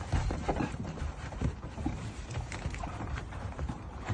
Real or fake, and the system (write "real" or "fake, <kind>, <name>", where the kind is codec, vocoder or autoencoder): fake, vocoder, BigVGAN v2